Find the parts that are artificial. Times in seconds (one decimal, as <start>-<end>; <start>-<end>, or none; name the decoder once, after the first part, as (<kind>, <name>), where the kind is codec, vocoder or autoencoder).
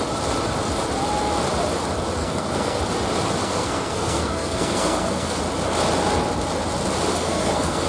2.2-2.8 (codec, SNAC); 3.4-5.4; 7.1-7.9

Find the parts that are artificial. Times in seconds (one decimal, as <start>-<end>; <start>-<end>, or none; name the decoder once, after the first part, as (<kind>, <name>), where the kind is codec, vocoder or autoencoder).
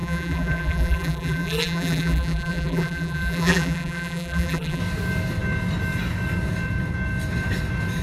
0.0-4.8 (vocoder, BigVGAN v2)